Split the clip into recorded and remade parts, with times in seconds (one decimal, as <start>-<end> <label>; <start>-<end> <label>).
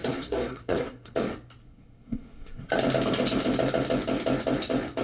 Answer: 0.0-1.1 remade; 1.1-1.6 recorded; 1.6-2.7 remade; 2.7-5.0 recorded